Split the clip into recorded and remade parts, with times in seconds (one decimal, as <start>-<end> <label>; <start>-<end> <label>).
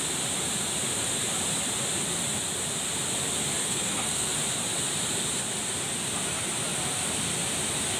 0.0-3.6 recorded; 3.6-4.3 remade; 4.3-8.0 recorded